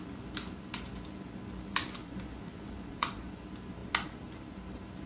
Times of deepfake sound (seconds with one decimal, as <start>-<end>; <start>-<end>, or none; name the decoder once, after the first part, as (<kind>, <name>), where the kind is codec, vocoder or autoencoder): 2.0-3.4 (vocoder, Vocos)